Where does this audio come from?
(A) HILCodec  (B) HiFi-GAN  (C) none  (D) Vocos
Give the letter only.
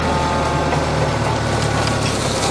C